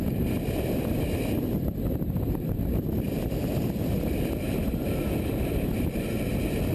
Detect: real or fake real